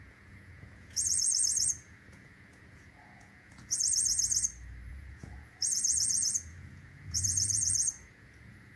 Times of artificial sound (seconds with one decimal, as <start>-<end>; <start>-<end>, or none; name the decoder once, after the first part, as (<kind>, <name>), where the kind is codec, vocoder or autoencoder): 0.0-4.1 (vocoder, Vocos); 4.9-8.8

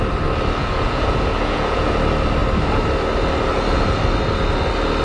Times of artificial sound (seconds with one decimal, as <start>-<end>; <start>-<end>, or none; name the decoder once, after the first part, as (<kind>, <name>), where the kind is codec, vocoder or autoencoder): 0.6-1.9 (vocoder, Vocos)

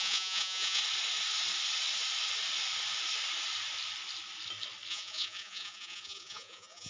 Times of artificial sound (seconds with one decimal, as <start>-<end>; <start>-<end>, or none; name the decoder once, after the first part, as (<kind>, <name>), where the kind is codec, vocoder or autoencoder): 0.0-0.8 (vocoder, Vocos); 4.9-6.9

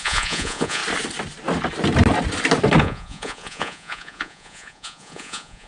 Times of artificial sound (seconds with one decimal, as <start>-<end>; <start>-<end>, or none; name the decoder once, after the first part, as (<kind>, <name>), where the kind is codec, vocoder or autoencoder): 0.0-0.8 (vocoder, Vocos); 2.8-5.7

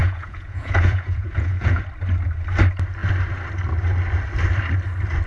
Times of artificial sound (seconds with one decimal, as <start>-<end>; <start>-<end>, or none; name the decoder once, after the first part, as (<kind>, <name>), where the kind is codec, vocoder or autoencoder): 0.0-1.8 (vocoder, Vocos)

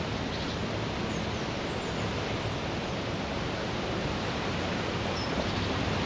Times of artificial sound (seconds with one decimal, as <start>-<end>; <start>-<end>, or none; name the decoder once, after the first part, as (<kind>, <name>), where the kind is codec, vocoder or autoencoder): none